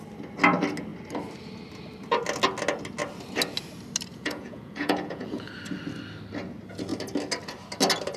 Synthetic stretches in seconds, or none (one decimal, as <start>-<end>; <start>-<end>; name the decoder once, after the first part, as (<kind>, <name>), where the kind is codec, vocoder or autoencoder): 4.1-5.5 (vocoder, Vocos)